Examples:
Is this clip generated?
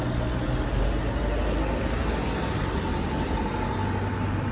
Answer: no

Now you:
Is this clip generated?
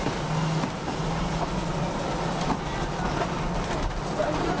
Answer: no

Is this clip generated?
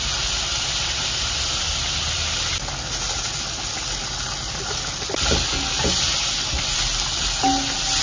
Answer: no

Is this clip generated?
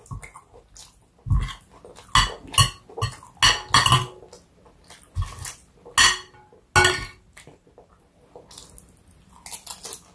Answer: no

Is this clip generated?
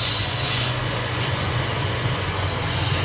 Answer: yes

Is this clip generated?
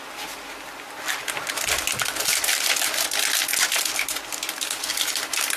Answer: no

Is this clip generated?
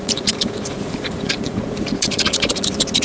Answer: yes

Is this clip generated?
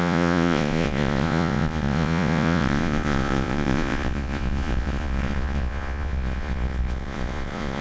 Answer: yes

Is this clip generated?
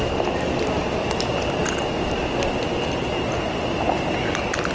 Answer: no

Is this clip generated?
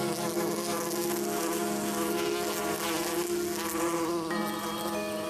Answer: no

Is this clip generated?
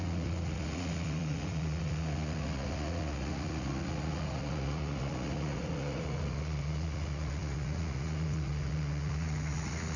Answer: yes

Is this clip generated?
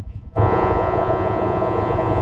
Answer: yes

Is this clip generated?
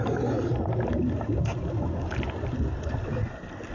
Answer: no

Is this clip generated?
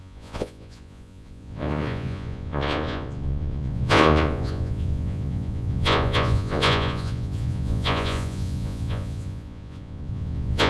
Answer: yes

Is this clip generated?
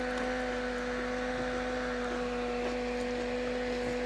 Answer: no